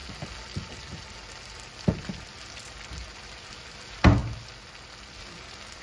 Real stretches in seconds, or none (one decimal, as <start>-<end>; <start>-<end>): 0.0-5.8